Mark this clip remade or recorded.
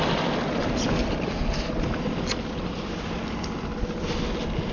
recorded